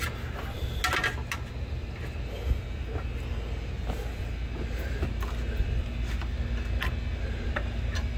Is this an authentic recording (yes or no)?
yes